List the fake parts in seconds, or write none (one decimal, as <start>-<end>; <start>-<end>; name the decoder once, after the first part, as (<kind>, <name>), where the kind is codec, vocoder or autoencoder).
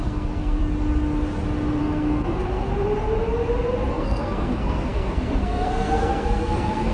0.0-0.6 (codec, SNAC); 1.8-2.7; 3.9-6.9